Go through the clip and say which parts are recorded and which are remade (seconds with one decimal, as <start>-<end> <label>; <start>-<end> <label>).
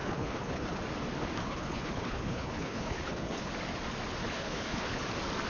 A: 0.0-0.8 remade; 0.8-1.4 recorded; 1.4-3.5 remade; 3.5-4.2 recorded; 4.2-5.0 remade; 5.0-5.5 recorded